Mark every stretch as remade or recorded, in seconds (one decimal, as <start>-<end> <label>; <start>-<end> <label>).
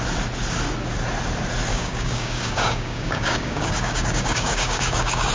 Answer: 0.0-1.7 recorded; 1.7-5.3 remade